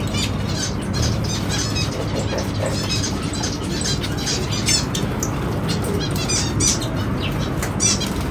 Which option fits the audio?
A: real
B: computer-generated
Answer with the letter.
A